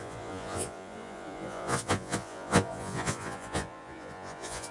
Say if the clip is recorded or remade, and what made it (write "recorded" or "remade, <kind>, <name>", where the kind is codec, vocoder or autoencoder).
remade, vocoder, Vocos